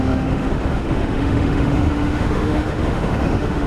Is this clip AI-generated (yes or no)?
yes